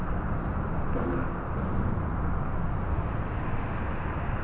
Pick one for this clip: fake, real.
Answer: real